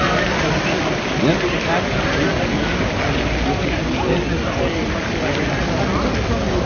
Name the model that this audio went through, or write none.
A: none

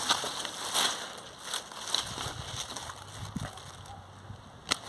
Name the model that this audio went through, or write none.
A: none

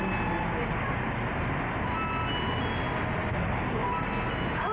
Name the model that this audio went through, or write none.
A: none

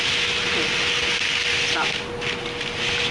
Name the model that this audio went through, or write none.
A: none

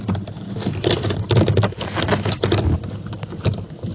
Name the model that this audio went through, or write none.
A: none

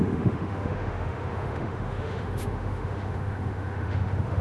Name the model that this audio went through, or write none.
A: autoencoder, DAC-VAE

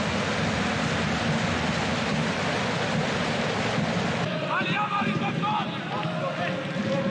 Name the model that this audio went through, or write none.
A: none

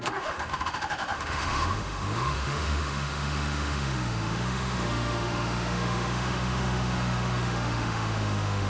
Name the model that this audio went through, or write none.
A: autoencoder, DAC-VAE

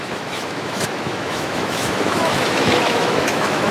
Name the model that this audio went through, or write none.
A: autoencoder, DAC-VAE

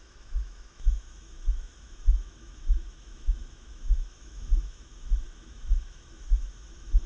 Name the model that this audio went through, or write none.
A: autoencoder, DAC-VAE